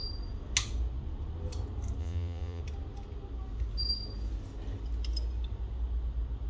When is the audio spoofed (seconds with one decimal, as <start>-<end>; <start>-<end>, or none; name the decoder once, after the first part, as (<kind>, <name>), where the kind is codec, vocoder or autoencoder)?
2.0-2.6 (vocoder, Vocos)